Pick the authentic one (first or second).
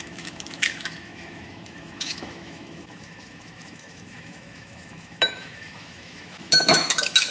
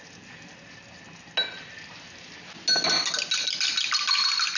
second